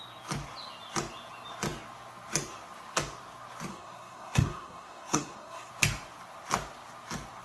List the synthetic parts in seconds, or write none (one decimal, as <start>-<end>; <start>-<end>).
3.7-5.7